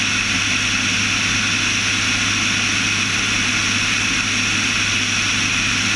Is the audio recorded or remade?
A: recorded